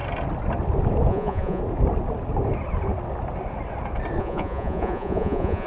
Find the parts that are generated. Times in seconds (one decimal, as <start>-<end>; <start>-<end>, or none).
1.1-1.6; 4.2-5.7